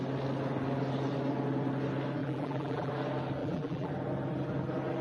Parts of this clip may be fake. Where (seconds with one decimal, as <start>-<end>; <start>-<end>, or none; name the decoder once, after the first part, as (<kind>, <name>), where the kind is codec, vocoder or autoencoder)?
2.2-2.9 (vocoder, BigVGAN v2); 3.4-3.9